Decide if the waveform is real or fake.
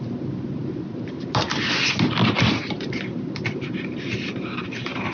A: fake